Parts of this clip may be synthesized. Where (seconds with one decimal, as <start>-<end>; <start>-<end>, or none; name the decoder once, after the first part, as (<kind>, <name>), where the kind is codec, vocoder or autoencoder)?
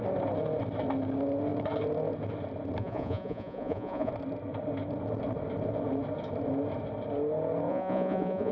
2.8-4.1 (vocoder, Vocos); 7.7-8.5